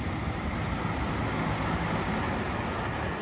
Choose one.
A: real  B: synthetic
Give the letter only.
A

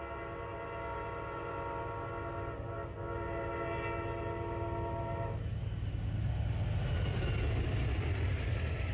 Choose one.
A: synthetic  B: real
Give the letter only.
B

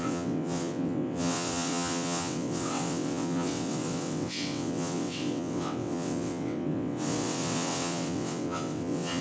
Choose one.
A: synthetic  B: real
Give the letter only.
A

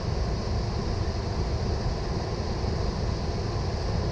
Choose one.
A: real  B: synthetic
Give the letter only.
A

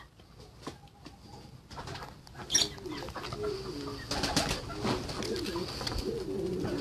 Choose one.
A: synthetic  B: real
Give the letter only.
B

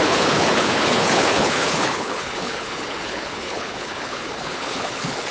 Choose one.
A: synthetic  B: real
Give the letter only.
A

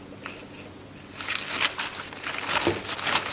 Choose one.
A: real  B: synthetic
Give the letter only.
A